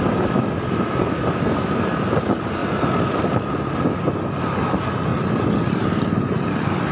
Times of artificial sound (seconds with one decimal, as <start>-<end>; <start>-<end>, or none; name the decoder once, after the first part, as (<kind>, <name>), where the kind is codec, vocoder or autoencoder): none